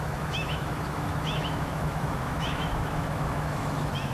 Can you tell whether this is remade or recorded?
remade